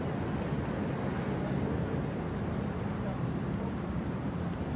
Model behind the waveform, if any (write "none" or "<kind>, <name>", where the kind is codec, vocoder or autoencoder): none